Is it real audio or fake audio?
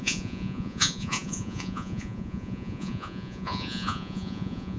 fake